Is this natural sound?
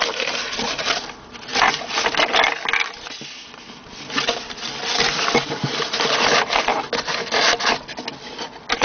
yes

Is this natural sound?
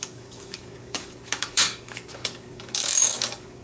no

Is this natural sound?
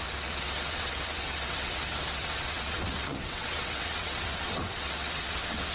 no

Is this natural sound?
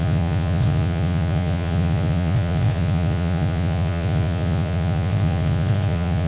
no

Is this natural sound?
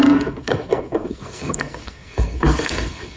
no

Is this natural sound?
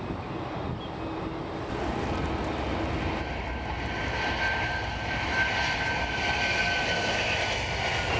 yes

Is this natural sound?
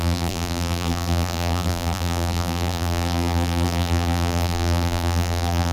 no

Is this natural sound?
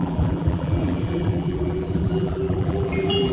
no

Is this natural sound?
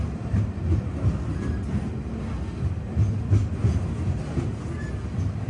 yes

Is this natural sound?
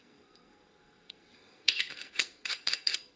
no